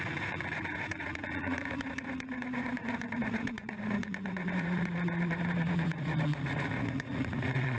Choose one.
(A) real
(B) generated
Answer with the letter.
B